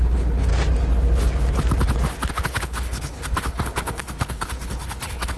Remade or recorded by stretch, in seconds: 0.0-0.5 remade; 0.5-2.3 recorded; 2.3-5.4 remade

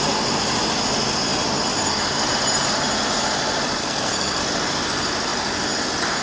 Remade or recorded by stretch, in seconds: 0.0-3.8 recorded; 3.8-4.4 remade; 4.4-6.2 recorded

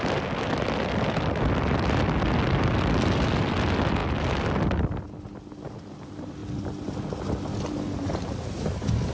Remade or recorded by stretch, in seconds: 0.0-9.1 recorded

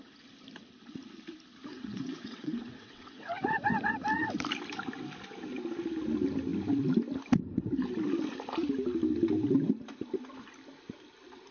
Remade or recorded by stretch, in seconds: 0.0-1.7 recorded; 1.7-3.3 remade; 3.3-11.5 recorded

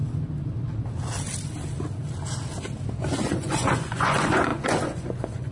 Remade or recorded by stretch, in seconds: 0.0-3.0 recorded; 3.0-5.5 remade